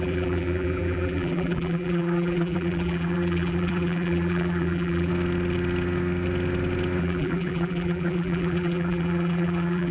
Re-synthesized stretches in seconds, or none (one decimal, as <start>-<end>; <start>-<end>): 0.0-5.1; 7.0-9.9